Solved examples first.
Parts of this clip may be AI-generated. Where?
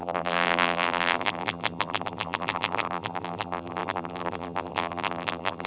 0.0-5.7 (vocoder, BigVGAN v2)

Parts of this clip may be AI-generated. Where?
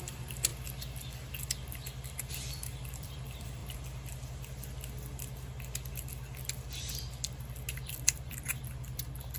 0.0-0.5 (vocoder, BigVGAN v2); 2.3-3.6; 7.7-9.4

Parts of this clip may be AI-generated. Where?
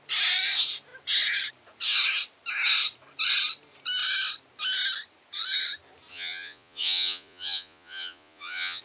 6.1-8.8 (vocoder, Vocos)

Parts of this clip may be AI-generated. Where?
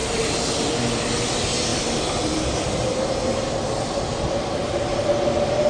1.7-5.0 (vocoder, BigVGAN v2)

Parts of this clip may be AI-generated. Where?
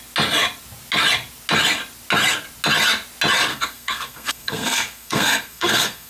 3.5-6.1 (codec, SNAC)